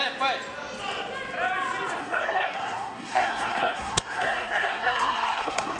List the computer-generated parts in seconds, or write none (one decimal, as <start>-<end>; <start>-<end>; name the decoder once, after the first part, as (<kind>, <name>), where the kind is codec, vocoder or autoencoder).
2.0-5.8 (codec, SNAC)